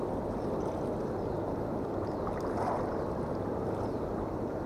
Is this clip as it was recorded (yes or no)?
yes